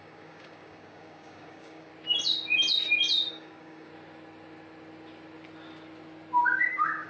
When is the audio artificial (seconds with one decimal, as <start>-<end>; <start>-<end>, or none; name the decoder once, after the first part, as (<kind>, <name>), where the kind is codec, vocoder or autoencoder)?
0.0-1.9 (codec, DAC); 3.3-3.9; 6.4-7.1